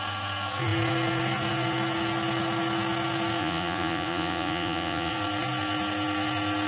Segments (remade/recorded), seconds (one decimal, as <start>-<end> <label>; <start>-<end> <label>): 0.0-3.4 recorded; 3.4-5.1 remade; 5.1-6.7 recorded

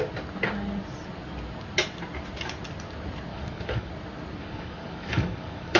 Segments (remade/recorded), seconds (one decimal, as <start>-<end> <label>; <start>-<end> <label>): 0.0-3.3 recorded; 3.3-3.9 remade; 3.9-4.4 recorded; 4.4-5.8 remade

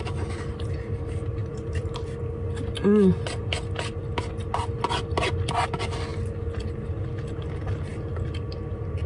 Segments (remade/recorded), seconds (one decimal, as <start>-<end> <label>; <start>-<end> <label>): 0.0-1.4 recorded; 1.4-2.2 remade; 2.2-9.1 recorded

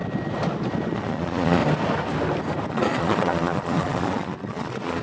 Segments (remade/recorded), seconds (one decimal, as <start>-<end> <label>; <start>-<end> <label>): 0.0-0.9 recorded; 0.9-1.6 remade; 1.6-2.7 recorded; 2.7-5.0 remade

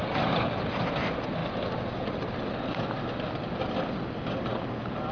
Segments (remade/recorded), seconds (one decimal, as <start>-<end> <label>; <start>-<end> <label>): 0.0-5.1 recorded

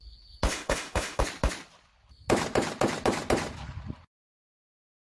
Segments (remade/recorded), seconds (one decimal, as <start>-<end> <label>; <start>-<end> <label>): 0.0-0.5 recorded; 0.5-1.2 remade; 1.2-5.2 recorded

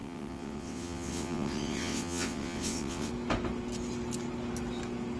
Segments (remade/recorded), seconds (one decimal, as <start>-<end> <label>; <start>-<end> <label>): 0.0-3.1 remade; 3.1-5.2 recorded

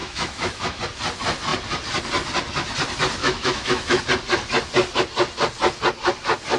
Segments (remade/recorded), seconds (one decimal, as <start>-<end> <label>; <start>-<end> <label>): 0.0-0.8 remade; 0.8-3.2 recorded; 3.2-4.0 remade; 4.0-6.6 recorded